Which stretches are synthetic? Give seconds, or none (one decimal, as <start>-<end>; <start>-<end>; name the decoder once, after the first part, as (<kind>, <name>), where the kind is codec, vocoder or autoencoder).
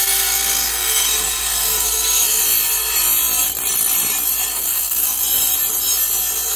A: 0.0-2.4 (codec, SNAC); 4.5-5.2